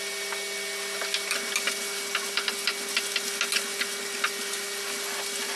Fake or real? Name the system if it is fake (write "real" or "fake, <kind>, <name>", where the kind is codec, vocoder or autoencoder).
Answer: real